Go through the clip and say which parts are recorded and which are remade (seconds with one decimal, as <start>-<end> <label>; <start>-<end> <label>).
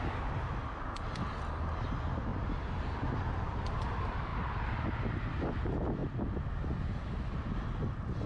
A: 0.0-2.3 recorded; 2.3-3.1 remade; 3.1-8.3 recorded